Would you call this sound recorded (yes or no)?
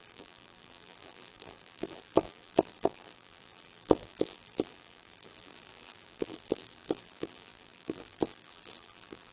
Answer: no